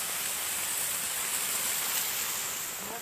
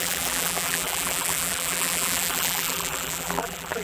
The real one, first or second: first